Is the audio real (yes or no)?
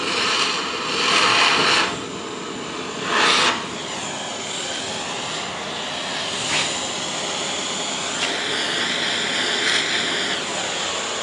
yes